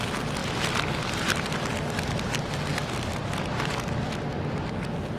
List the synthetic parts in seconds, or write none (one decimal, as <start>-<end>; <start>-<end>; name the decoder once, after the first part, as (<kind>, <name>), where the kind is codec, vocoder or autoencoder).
none